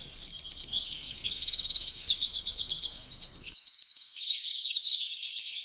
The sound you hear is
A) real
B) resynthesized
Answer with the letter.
B